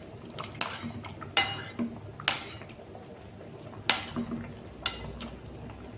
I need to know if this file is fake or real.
real